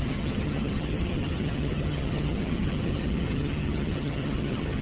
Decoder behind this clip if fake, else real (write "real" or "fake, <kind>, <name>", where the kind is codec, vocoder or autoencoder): fake, vocoder, HiFi-GAN